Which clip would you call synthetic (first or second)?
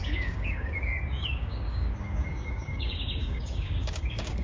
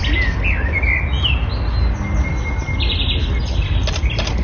first